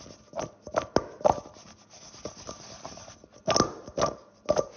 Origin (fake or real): real